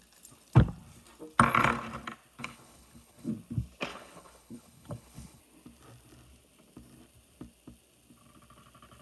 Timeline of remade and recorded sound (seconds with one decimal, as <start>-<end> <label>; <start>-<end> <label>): 0.0-2.4 recorded; 2.4-3.3 remade; 3.3-3.9 recorded; 3.9-5.4 remade; 5.4-9.0 recorded